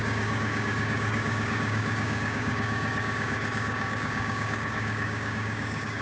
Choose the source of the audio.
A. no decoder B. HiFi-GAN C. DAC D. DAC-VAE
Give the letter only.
C